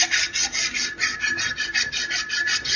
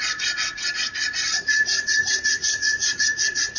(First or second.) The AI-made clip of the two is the second